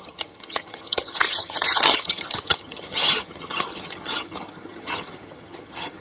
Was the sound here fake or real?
fake